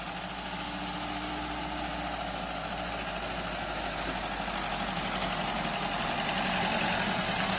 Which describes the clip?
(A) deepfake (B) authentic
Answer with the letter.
B